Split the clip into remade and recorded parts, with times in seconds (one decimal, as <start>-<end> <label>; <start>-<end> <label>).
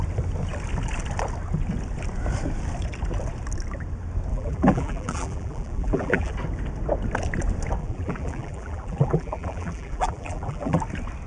0.0-4.3 recorded; 4.3-6.3 remade; 6.3-7.8 recorded; 7.8-10.8 remade; 10.8-11.3 recorded